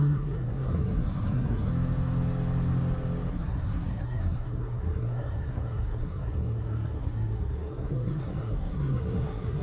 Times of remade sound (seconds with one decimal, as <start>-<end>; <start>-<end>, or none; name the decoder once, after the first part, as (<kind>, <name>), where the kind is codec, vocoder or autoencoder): 0.0-1.7 (codec, SNAC); 3.3-9.6